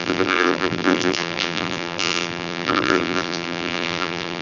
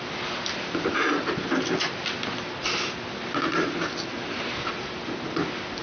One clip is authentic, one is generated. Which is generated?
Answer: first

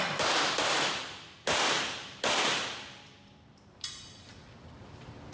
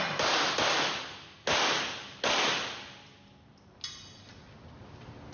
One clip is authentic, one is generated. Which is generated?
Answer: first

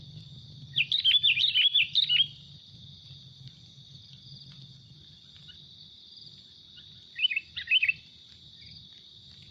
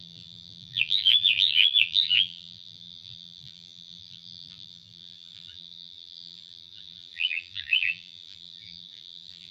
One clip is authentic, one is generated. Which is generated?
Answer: second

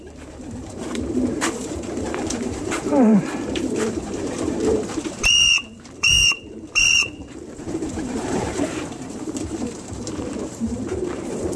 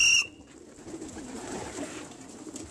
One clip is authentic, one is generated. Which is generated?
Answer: first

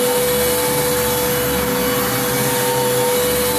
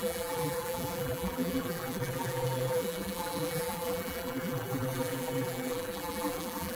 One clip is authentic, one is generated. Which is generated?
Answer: second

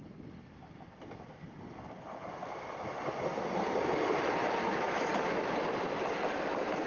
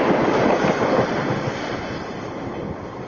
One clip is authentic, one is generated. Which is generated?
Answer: first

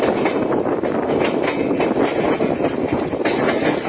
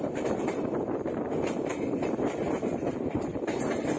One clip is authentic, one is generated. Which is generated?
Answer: second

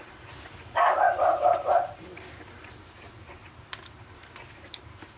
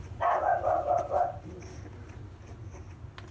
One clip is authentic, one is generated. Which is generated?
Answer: first